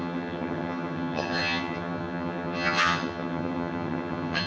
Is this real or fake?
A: fake